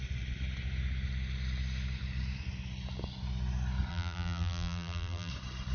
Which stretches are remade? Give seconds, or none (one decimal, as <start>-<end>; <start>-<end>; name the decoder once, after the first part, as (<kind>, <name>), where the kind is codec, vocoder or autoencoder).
3.9-5.3 (vocoder, BigVGAN v2)